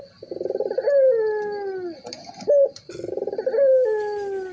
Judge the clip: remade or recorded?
recorded